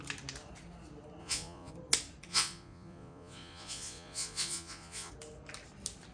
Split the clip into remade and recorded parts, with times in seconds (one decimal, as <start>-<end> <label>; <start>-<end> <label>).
0.0-1.2 recorded; 1.2-1.7 remade; 1.7-2.3 recorded; 2.3-5.1 remade; 5.1-6.1 recorded